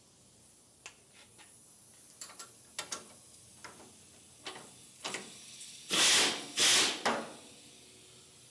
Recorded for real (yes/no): yes